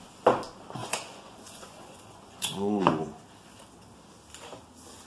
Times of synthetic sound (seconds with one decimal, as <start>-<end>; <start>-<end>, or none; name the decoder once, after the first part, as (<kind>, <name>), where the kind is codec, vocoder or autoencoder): 0.8-2.9 (vocoder, Vocos)